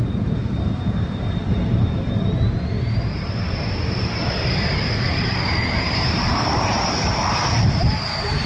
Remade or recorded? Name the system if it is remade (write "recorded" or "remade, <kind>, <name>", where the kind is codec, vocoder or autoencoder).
remade, vocoder, BigVGAN v2